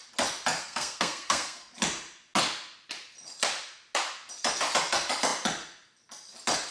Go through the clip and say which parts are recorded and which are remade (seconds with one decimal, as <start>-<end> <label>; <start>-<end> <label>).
0.0-0.6 recorded; 0.6-1.7 remade; 1.7-6.7 recorded